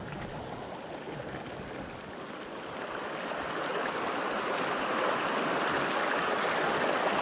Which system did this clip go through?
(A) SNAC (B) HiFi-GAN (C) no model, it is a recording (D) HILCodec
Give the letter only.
C